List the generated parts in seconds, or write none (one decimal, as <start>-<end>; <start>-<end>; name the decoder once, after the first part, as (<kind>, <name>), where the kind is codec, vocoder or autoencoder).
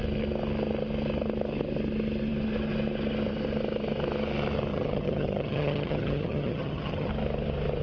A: 4.7-7.1 (vocoder, HiFi-GAN)